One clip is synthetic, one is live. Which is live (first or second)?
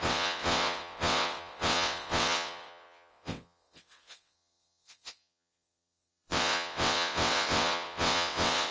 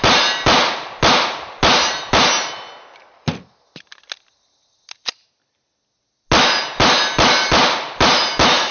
second